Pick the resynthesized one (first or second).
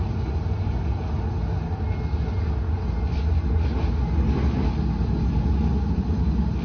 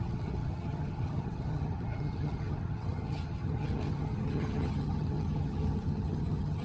second